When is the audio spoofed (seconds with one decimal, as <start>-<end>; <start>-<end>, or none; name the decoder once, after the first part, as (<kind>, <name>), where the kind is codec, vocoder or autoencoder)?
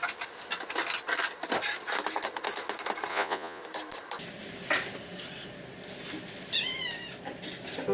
3.1-3.6 (vocoder, Vocos)